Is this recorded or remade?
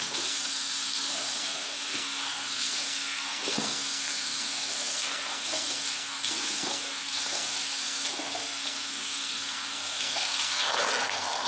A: remade